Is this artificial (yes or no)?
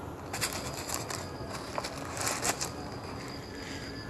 no